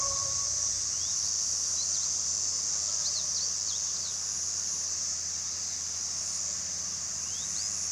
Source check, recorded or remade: recorded